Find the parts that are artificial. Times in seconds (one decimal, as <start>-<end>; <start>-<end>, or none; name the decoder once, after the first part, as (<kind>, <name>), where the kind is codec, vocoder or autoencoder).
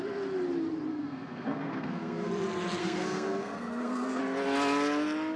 0.9-2.3 (codec, SNAC); 2.8-4.2